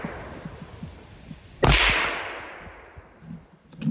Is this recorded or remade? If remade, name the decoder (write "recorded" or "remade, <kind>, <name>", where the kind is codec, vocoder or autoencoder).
recorded